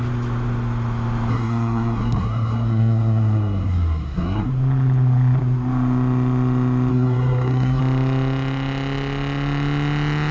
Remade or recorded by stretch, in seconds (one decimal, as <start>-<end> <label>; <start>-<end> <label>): 0.0-1.3 recorded; 1.3-4.5 remade; 4.5-6.9 recorded; 6.9-7.8 remade; 7.8-10.3 recorded